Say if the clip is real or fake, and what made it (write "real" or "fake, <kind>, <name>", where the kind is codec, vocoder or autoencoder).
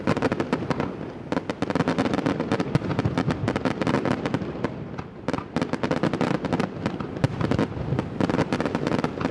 real